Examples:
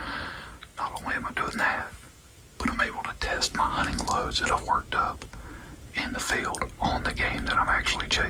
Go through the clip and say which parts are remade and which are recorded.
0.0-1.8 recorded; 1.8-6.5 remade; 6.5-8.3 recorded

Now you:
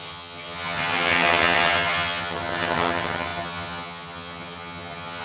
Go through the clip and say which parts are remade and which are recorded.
0.0-5.2 remade

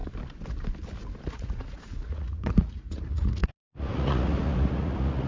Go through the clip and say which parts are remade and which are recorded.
0.0-1.3 recorded; 1.3-5.3 remade

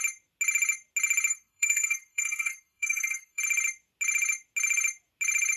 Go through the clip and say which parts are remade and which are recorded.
0.0-1.3 recorded; 1.3-3.4 remade; 3.4-5.6 recorded

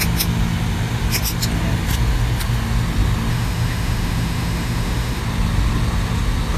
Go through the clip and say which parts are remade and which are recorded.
0.0-3.3 recorded; 3.3-5.2 remade; 5.2-6.6 recorded

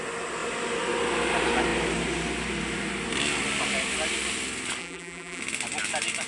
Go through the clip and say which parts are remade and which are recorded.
0.0-4.8 recorded; 4.8-5.4 remade; 5.4-6.3 recorded

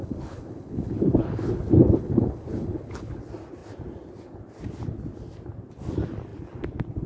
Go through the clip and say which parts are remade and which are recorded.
0.0-3.2 remade; 3.2-7.1 recorded

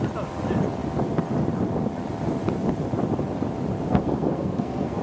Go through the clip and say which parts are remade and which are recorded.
0.0-3.8 recorded; 3.8-5.0 remade